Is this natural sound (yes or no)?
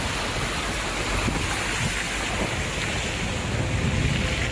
yes